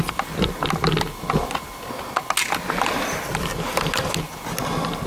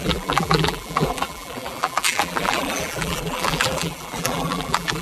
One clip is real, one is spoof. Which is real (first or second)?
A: first